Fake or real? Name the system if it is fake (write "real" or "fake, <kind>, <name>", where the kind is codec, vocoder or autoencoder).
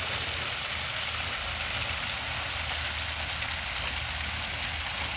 real